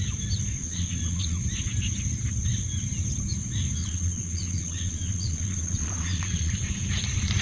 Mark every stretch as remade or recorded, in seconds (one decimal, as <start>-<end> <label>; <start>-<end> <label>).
0.0-0.6 recorded; 0.6-1.4 remade; 1.4-3.8 recorded; 3.8-6.6 remade; 6.6-7.4 recorded